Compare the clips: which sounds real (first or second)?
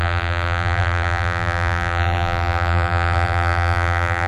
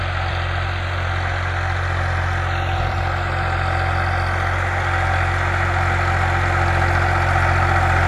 second